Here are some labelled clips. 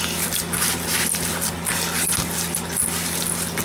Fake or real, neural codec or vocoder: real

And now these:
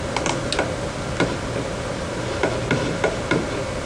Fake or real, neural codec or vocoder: real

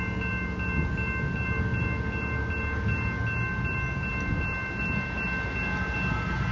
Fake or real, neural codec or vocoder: real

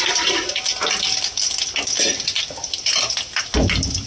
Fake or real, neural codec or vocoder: real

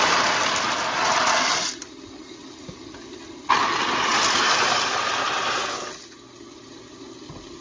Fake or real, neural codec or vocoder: real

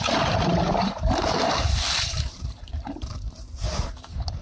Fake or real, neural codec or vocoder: fake, vocoder, BigVGAN v2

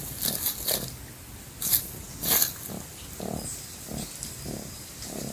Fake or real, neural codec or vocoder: real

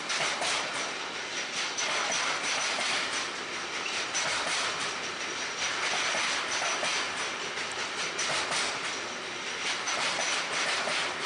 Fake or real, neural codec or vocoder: fake, vocoder, BigVGAN v2